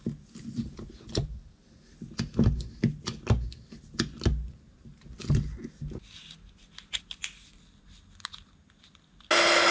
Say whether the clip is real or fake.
real